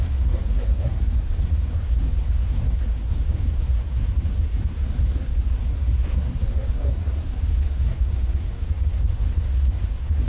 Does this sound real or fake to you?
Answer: fake